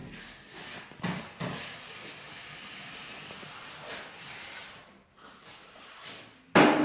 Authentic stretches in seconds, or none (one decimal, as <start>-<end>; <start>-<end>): 0.0-6.8